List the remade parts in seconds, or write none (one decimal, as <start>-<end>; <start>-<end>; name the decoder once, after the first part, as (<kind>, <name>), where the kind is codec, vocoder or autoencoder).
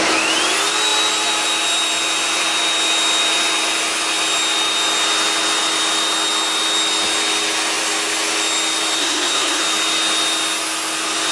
9.0-9.6 (codec, SNAC)